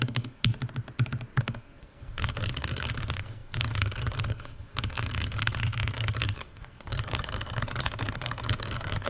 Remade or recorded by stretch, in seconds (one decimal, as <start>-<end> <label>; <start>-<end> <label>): 0.0-0.5 remade; 0.5-1.4 recorded; 1.4-9.1 remade